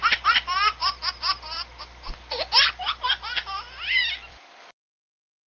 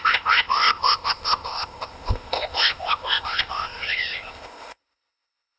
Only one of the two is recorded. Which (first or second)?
first